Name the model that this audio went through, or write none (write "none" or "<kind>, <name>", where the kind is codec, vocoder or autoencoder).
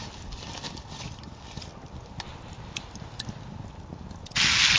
none